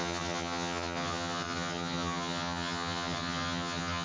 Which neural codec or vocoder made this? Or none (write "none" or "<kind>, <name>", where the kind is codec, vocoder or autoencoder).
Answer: vocoder, HiFi-GAN